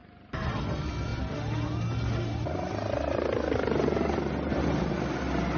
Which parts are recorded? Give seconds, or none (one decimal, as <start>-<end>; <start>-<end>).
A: 0.0-5.6